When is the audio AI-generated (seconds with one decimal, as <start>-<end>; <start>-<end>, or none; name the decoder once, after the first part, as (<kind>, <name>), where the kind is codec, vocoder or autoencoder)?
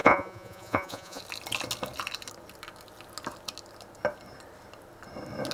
0.0-1.2 (vocoder, Vocos)